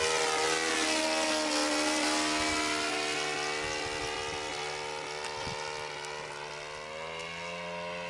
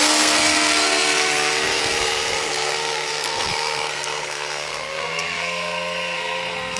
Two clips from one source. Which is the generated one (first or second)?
second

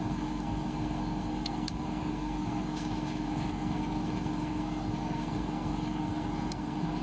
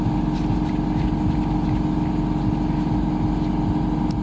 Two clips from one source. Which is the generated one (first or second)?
first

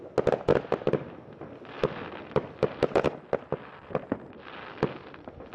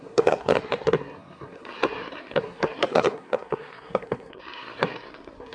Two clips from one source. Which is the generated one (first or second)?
second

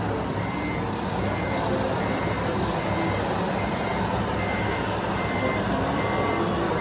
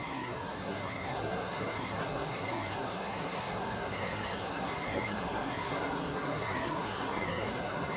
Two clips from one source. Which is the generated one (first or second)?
second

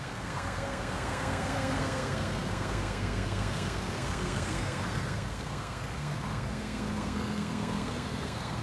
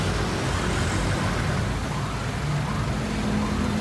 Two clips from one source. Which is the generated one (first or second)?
first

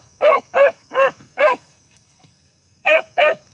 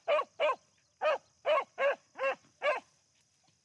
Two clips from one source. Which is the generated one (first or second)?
first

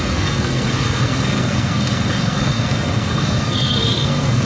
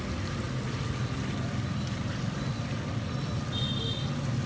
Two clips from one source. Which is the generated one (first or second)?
first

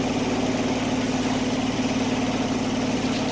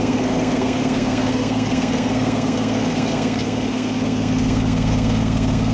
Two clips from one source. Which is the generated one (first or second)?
second